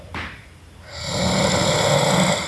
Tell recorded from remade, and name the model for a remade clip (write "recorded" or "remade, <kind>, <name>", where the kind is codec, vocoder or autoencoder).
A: recorded